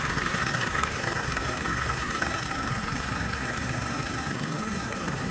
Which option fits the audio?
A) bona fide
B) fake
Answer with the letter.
B